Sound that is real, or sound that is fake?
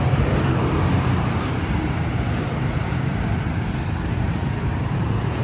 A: fake